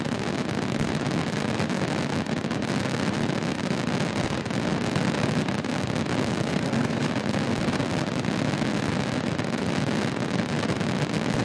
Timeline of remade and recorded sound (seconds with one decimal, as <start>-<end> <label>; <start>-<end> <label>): 0.0-6.5 recorded; 6.5-7.1 remade; 7.1-11.4 recorded